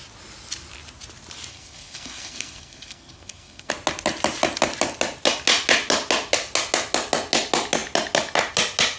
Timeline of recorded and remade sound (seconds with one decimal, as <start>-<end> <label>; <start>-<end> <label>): 0.0-1.5 recorded; 1.5-3.7 remade; 3.7-9.0 recorded